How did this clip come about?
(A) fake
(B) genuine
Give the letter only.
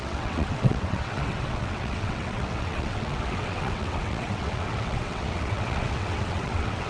A